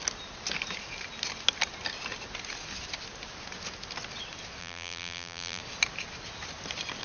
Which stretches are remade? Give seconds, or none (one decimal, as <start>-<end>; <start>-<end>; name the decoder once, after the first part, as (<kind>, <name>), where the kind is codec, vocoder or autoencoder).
4.6-5.6 (vocoder, BigVGAN v2)